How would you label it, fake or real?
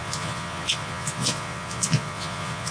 fake